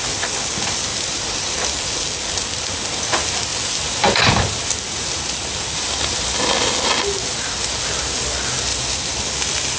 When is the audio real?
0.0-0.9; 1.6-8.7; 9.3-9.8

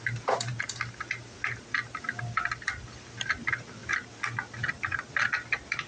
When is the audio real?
0.0-5.9